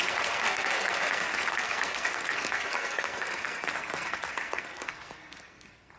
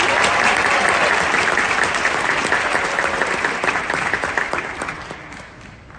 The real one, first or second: second